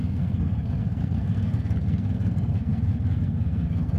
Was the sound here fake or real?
fake